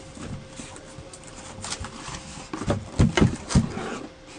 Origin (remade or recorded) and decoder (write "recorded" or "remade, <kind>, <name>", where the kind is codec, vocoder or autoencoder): recorded